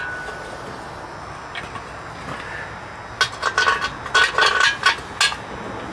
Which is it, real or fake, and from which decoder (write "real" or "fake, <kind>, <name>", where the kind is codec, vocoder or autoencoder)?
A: real